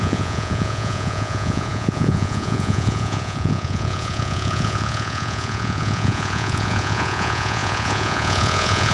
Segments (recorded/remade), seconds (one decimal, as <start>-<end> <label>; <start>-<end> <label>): 0.0-8.9 remade